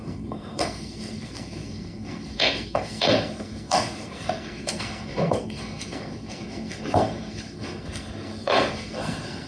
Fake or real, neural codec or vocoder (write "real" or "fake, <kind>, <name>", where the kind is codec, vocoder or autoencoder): fake, codec, SNAC